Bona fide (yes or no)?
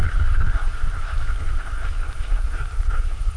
no